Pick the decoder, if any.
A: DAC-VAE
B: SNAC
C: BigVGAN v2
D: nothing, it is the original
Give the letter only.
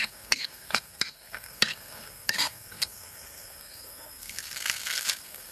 B